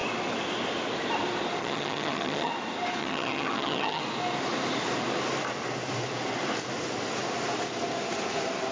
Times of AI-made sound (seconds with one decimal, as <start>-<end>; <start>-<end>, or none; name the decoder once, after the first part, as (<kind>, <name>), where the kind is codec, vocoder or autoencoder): 1.6-2.5 (vocoder, HiFi-GAN); 3.0-4.0